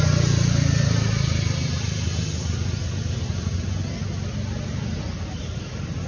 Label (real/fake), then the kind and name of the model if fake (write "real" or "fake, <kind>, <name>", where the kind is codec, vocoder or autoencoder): real